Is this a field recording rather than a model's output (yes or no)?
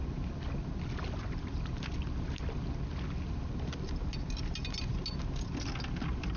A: yes